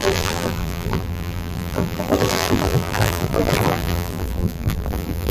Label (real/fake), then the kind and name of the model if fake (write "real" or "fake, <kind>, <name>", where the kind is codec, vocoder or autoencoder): fake, vocoder, BigVGAN v2